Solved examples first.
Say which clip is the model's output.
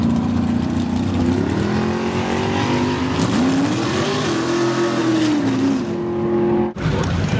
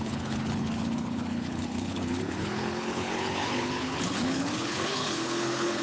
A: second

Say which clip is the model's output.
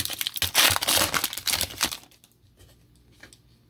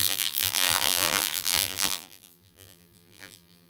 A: second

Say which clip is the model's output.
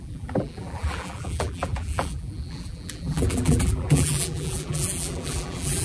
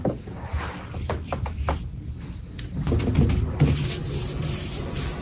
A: first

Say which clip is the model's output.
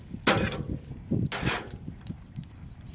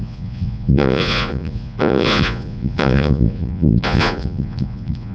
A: second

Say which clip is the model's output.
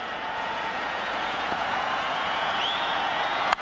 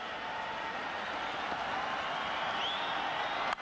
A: first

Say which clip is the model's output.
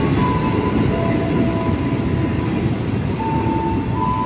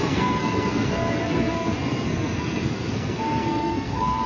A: second